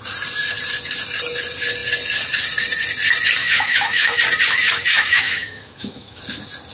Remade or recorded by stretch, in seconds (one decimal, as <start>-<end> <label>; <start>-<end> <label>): 0.0-3.4 recorded; 3.4-4.2 remade; 4.2-4.9 recorded; 4.9-6.2 remade; 6.2-6.7 recorded

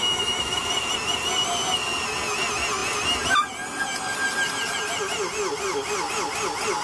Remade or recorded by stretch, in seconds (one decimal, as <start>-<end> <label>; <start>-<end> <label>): 0.0-0.6 remade; 0.6-6.8 recorded

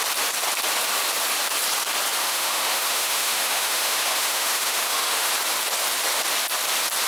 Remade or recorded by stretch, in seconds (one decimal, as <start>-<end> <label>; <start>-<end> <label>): 0.0-2.2 recorded; 2.2-5.3 remade; 5.3-7.1 recorded

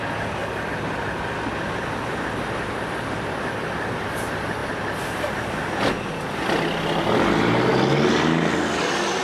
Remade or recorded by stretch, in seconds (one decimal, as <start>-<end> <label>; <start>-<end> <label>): 0.0-9.2 recorded